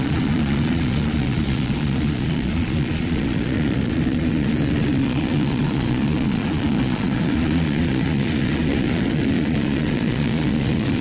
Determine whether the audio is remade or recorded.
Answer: remade